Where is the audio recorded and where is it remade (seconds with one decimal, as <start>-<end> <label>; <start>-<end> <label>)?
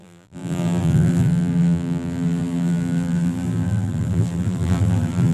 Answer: 0.0-5.3 remade